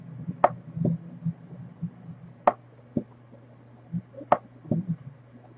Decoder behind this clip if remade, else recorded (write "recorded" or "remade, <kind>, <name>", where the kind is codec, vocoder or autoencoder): recorded